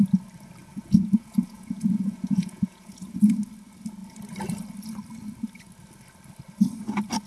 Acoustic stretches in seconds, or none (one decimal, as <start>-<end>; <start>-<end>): 0.0-0.6; 3.2-7.3

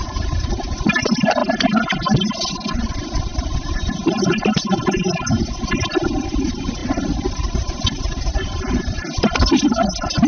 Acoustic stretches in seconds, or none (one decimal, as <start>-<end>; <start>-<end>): 0.0-3.3; 4.2-10.3